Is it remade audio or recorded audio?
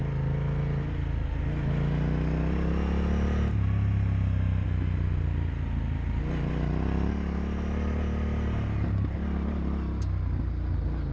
recorded